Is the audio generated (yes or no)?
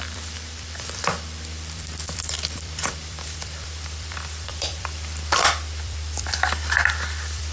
yes